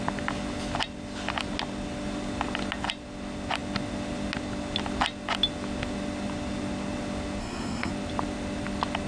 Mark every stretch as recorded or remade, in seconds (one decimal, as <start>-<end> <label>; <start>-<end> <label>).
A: 0.0-7.4 recorded; 7.4-7.9 remade; 7.9-9.1 recorded